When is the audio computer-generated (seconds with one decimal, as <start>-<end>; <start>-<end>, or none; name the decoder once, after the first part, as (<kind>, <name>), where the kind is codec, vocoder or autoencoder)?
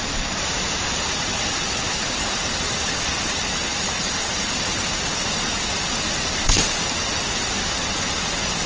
3.7-4.5 (vocoder, BigVGAN v2)